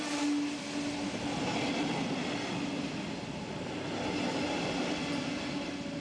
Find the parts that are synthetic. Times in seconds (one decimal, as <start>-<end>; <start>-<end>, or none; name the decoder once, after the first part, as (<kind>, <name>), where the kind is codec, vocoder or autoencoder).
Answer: none